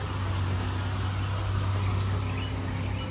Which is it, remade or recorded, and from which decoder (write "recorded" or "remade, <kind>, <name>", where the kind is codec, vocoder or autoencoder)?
recorded